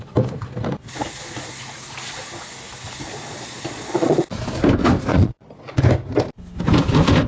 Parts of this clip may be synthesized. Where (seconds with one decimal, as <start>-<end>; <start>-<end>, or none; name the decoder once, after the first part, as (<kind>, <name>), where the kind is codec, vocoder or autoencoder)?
3.1-4.4 (vocoder, Vocos); 5.1-5.8